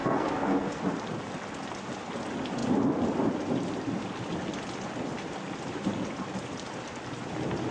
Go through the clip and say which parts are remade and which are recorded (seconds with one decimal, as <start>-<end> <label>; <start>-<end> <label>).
0.0-0.8 remade; 0.8-7.7 recorded